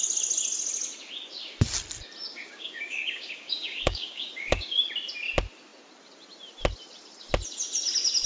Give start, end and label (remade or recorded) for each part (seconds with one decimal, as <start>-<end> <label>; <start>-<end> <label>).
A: 0.0-2.3 recorded; 2.3-4.8 remade; 4.8-8.3 recorded